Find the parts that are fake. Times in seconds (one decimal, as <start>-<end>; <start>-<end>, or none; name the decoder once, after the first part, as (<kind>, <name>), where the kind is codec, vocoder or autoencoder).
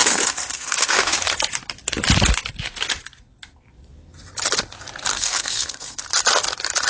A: 0.0-1.2 (codec, SNAC); 5.1-6.0